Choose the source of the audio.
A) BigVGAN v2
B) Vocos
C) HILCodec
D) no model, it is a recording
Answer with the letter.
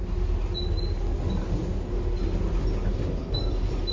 D